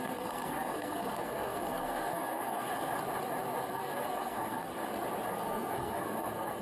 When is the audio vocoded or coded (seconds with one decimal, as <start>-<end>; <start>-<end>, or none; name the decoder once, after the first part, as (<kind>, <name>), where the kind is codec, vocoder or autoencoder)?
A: 0.0-2.7 (codec, SNAC); 3.7-4.7; 5.3-6.6